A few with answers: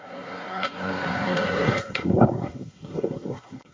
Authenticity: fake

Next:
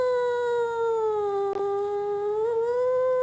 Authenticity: real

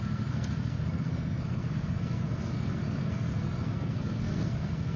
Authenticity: fake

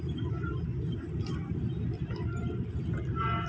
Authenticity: real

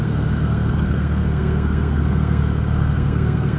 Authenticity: fake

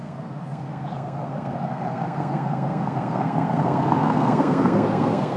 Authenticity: fake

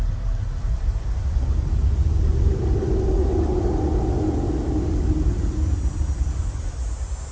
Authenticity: real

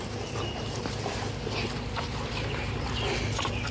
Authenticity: real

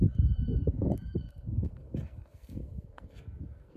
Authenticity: fake